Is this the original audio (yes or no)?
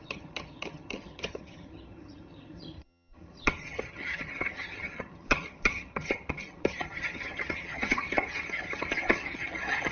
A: no